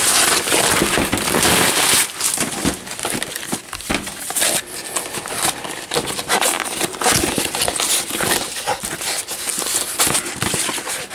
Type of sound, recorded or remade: recorded